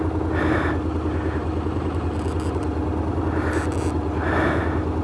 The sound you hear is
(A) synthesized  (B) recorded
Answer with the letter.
B